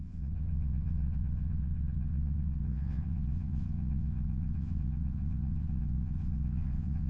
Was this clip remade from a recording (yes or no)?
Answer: yes